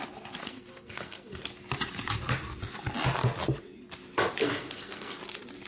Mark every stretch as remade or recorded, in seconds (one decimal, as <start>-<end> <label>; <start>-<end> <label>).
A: 0.0-0.4 recorded; 0.4-1.4 remade; 1.4-4.4 recorded; 4.4-5.2 remade; 5.2-5.7 recorded